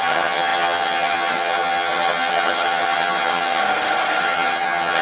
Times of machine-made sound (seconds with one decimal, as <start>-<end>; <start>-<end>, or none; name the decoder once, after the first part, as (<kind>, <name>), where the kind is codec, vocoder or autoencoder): 0.0-3.6 (vocoder, HiFi-GAN); 4.2-5.0